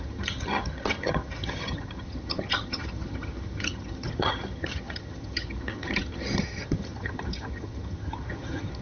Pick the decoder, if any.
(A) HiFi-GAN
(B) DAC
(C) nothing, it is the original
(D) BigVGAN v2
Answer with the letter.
A